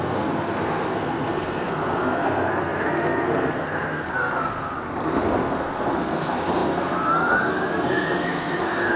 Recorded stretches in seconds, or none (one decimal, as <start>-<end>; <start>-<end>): none